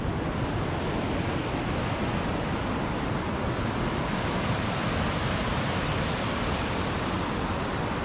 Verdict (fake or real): real